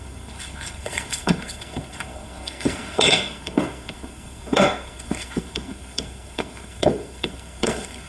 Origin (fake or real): fake